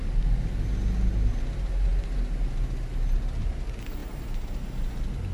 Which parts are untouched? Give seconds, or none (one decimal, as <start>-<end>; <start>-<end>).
0.0-5.3